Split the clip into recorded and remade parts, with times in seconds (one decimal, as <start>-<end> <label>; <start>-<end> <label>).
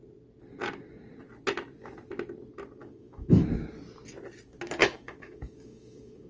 0.0-2.8 recorded; 2.8-3.4 remade; 3.4-4.8 recorded; 4.8-6.3 remade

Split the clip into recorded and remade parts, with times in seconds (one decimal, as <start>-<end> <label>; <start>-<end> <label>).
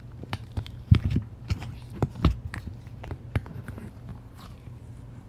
0.0-2.0 remade; 2.0-2.6 recorded; 2.6-5.3 remade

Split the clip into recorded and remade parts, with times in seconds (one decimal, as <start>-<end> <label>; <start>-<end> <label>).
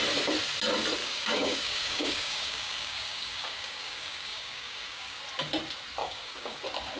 0.0-1.0 recorded; 1.0-5.2 remade; 5.2-6.0 recorded; 6.0-6.6 remade; 6.6-7.0 recorded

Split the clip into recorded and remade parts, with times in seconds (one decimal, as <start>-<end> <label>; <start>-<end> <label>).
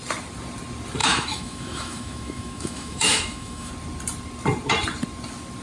0.0-1.0 recorded; 1.0-3.7 remade; 3.7-5.6 recorded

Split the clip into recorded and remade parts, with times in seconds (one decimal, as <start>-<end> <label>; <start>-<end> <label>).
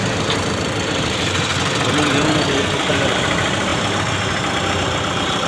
0.0-1.5 remade; 1.5-2.9 recorded; 2.9-5.5 remade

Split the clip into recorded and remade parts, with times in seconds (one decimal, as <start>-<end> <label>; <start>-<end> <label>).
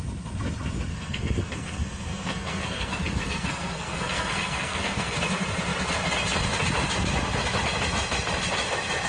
0.0-0.9 recorded; 0.9-5.2 remade; 5.2-9.1 recorded